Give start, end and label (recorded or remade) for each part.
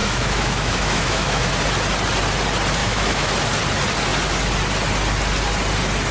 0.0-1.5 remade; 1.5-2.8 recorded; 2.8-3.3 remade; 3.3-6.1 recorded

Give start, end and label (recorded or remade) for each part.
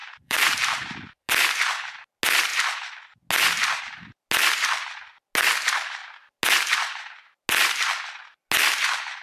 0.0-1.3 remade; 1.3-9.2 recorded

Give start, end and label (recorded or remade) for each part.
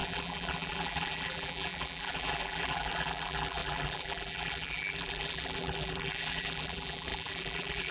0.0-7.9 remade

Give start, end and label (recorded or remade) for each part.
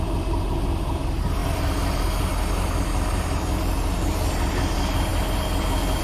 0.0-6.0 recorded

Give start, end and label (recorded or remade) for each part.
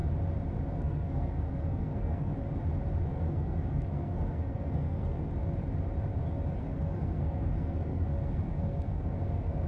0.0-0.7 recorded; 0.7-2.3 remade; 2.3-3.1 recorded; 3.1-5.2 remade; 5.2-6.6 recorded; 6.6-9.7 remade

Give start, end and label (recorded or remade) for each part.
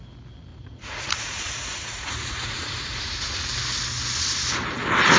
0.0-0.5 recorded; 0.5-3.6 remade; 3.6-5.2 recorded